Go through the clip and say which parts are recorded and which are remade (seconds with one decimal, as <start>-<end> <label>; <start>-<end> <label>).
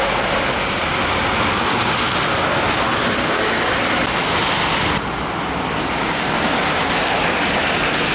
0.0-3.2 recorded; 3.2-3.8 remade; 3.8-8.1 recorded